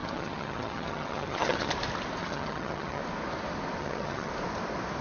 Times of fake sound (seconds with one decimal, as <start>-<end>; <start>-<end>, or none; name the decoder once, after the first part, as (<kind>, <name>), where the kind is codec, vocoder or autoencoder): 0.0-1.7 (vocoder, HiFi-GAN); 2.2-3.0; 3.8-4.3